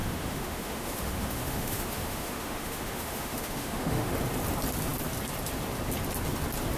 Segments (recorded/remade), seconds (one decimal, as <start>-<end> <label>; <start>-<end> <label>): 0.0-4.1 remade; 4.1-6.8 recorded